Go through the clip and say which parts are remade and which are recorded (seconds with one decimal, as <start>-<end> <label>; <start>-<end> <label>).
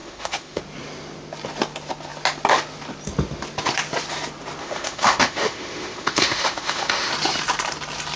0.0-0.6 remade; 0.6-4.6 recorded; 4.6-7.1 remade; 7.1-8.2 recorded